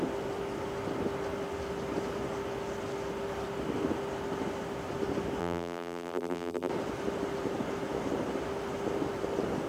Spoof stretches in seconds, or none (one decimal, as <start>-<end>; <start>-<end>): 5.4-6.7